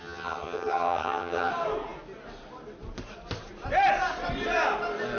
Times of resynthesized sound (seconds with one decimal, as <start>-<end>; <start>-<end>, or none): 0.0-1.5